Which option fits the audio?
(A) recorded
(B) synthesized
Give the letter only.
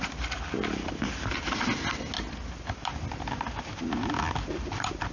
A